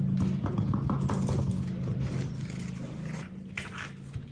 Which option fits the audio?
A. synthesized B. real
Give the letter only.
B